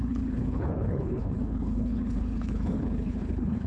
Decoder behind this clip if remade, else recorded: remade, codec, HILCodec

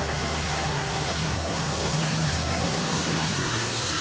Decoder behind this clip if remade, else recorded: remade, codec, SNAC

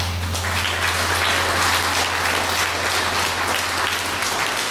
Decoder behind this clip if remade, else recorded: recorded